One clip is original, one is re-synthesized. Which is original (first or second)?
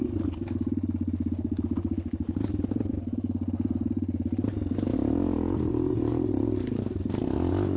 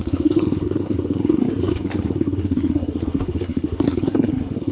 first